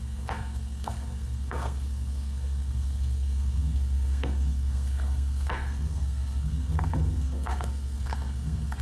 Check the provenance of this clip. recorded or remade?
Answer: remade